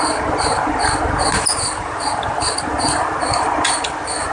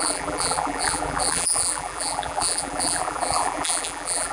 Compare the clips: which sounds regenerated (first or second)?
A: second